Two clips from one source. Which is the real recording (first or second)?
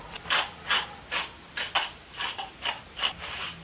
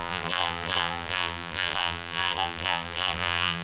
first